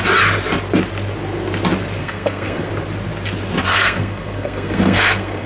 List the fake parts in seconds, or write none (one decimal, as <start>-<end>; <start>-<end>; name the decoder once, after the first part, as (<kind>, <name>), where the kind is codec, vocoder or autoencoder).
2.0-2.7 (codec, SNAC); 3.7-5.5